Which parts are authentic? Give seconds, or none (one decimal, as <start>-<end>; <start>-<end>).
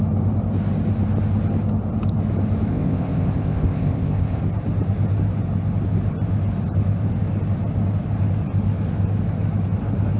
0.0-2.7; 4.4-10.2